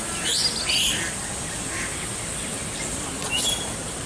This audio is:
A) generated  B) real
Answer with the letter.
B